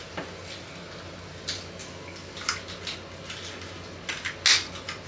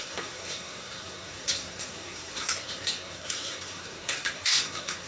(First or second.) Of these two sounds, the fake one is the second